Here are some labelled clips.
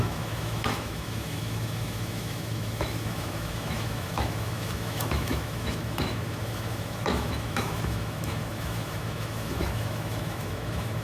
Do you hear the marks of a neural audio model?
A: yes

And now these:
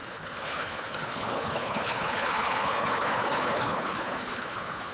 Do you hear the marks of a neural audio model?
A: yes